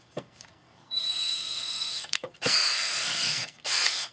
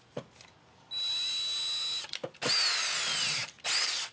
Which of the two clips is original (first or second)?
second